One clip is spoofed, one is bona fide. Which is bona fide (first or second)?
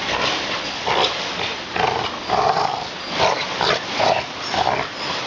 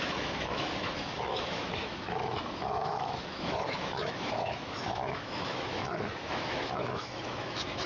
first